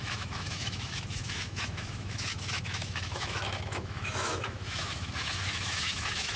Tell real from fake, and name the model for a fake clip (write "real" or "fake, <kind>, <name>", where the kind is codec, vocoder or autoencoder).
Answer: fake, autoencoder, DAC-VAE